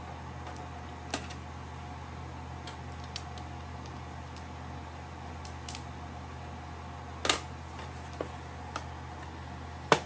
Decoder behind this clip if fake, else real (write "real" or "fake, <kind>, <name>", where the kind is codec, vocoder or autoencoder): real